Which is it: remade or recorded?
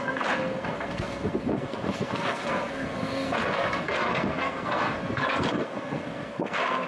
remade